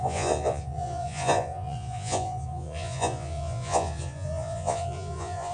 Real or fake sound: fake